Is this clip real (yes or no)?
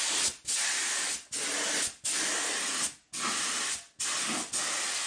yes